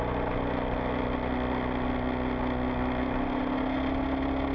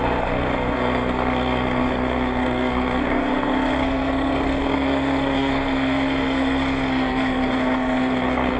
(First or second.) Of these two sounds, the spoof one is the second